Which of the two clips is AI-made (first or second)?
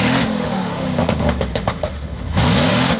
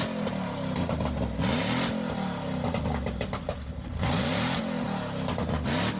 first